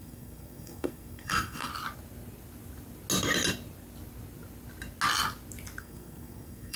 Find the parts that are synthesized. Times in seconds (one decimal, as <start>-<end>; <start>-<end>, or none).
0.0-1.7; 5.8-6.8